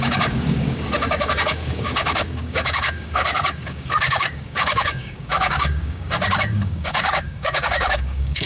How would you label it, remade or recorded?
remade